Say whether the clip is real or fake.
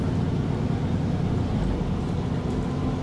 real